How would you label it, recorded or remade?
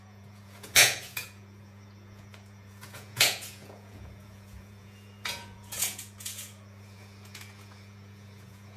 remade